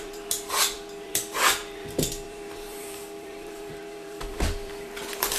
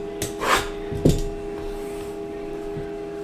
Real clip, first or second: second